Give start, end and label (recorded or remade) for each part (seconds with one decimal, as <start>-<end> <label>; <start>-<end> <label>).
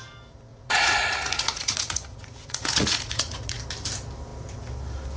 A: 0.0-0.5 recorded; 0.5-3.6 remade; 3.6-5.2 recorded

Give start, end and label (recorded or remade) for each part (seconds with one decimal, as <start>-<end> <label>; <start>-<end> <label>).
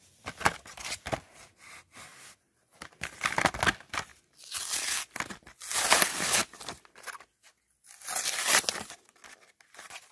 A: 0.0-10.1 recorded